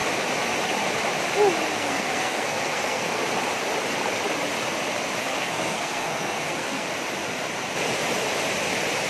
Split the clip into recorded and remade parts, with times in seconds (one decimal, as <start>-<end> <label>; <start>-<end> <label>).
0.0-1.7 recorded; 1.7-3.2 remade; 3.2-5.2 recorded; 5.2-6.9 remade; 6.9-9.1 recorded